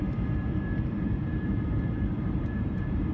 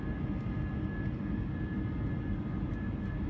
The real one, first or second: second